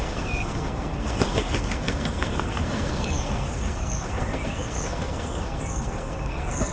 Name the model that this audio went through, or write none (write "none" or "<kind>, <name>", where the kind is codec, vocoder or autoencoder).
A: codec, SNAC